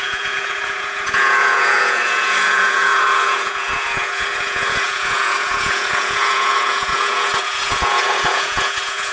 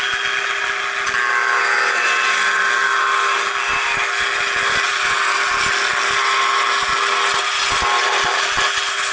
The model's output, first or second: first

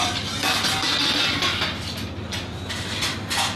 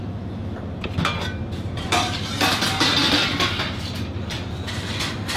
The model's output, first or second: second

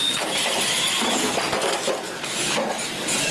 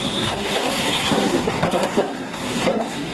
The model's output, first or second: second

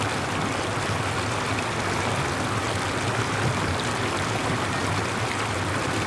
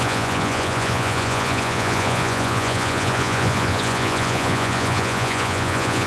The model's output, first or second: second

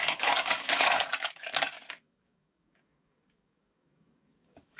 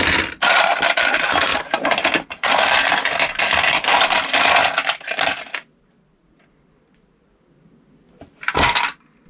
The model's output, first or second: first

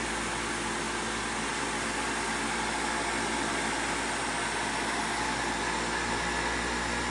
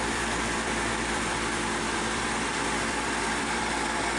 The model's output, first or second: second